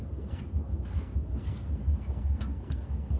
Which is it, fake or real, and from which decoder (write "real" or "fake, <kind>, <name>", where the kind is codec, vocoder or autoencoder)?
fake, codec, SNAC